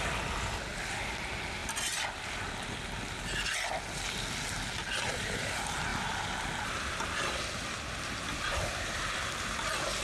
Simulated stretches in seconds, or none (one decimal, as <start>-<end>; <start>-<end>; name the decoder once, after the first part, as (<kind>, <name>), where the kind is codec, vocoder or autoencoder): none